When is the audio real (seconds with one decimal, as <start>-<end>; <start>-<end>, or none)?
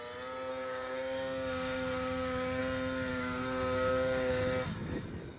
0.0-0.5; 2.6-3.1; 4.3-5.4